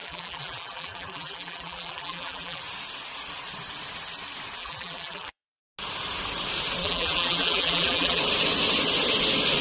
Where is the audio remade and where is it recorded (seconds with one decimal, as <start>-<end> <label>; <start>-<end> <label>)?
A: 0.0-2.6 remade; 2.6-4.6 recorded; 4.6-5.6 remade; 5.6-6.8 recorded; 6.8-8.2 remade; 8.2-9.6 recorded